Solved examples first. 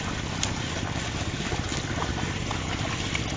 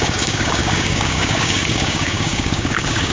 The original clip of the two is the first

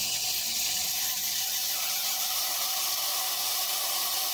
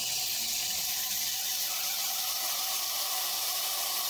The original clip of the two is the first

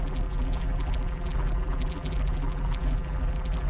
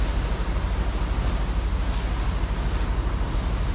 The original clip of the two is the second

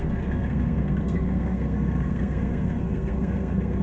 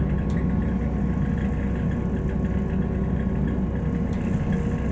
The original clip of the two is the second